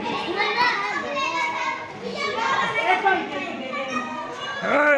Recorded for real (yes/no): yes